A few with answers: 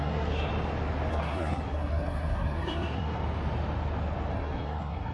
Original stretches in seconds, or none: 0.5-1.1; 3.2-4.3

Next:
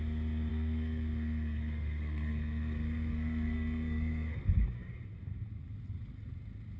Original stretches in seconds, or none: 0.0-0.5; 4.6-6.8

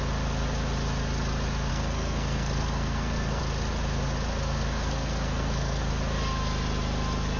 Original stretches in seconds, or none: 0.0-1.7; 3.4-4.3; 5.9-7.4

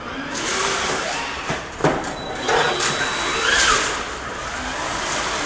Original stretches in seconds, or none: 0.0-5.5